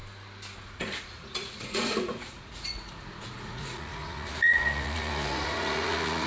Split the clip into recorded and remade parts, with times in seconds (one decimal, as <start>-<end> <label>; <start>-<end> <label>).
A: 0.0-0.6 recorded; 0.6-6.3 remade